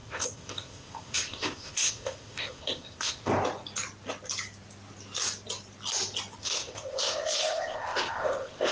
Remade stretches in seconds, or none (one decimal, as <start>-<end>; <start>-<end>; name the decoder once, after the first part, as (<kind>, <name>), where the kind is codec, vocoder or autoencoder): 0.0-3.3 (codec, ZipCodec); 6.4-8.7

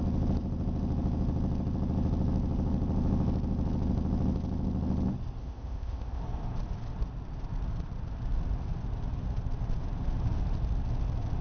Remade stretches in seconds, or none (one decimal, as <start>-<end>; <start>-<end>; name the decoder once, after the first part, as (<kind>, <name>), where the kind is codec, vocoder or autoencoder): 5.4-6.2 (codec, ZipCodec)

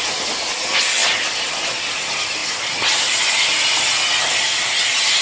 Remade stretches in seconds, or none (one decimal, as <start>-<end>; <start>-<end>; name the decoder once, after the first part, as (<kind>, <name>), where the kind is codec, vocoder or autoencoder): none

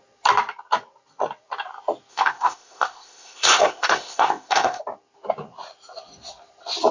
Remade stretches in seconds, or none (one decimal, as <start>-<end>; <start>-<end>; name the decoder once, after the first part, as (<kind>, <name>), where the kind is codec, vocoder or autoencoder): 2.1-4.8 (codec, ZipCodec)

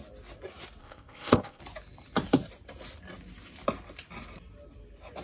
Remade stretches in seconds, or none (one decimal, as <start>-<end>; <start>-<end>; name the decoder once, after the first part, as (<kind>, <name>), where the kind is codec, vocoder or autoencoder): 0.8-1.6 (codec, ZipCodec)

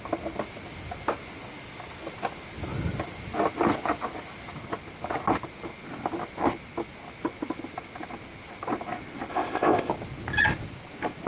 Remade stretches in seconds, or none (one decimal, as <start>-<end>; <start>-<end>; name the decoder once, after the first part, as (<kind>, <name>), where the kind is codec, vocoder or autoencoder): 9.3-9.9 (codec, ZipCodec)

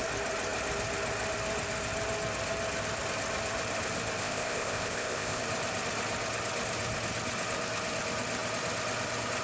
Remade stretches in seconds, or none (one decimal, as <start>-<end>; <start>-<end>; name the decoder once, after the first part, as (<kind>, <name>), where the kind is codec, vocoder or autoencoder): 4.2-5.4 (codec, ZipCodec)